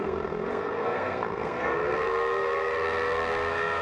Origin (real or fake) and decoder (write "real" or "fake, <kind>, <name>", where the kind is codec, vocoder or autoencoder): fake, codec, SNAC